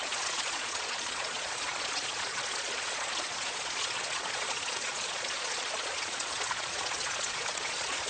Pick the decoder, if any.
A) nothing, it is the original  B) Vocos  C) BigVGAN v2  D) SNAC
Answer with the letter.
B